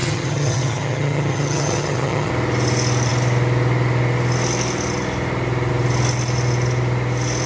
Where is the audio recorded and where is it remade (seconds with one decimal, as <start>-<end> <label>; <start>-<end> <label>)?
0.0-2.3 remade; 2.3-7.5 recorded